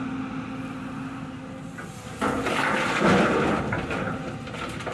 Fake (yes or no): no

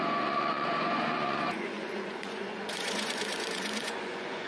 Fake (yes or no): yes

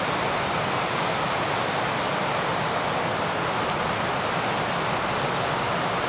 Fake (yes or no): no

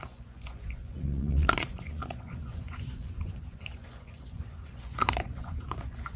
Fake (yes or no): yes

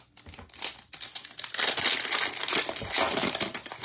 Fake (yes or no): no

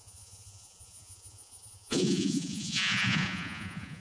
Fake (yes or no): yes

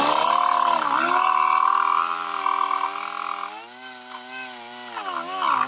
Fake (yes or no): no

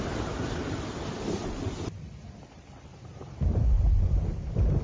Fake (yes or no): no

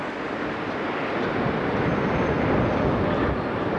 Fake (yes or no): no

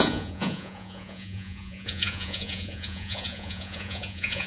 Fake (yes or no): yes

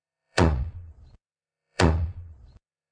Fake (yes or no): yes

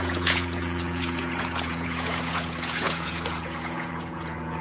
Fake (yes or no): yes